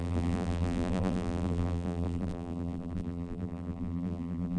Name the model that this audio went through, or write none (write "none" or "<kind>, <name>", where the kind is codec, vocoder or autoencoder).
vocoder, BigVGAN v2